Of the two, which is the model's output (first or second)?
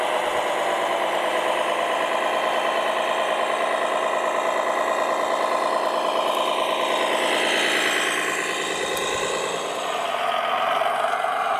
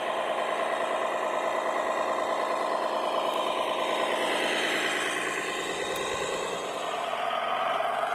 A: second